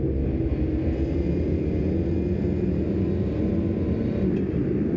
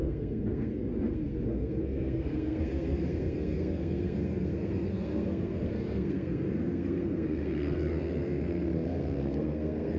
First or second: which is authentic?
first